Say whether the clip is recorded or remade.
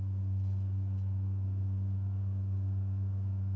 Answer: remade